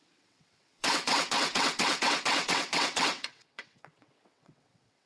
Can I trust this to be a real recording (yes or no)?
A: no